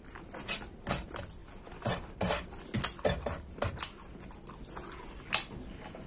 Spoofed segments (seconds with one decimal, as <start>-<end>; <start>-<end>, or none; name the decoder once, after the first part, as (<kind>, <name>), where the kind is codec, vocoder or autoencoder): none